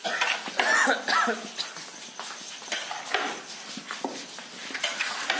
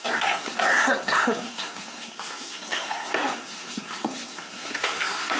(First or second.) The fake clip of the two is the second